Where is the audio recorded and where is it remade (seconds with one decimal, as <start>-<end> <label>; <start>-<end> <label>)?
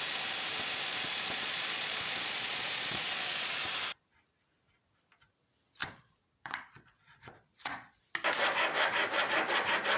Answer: 0.0-1.1 recorded; 1.1-3.5 remade; 3.5-5.8 recorded; 5.8-8.0 remade; 8.0-10.0 recorded